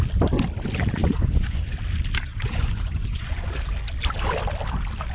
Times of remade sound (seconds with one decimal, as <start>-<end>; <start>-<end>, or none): 1.0-1.6; 2.3-3.5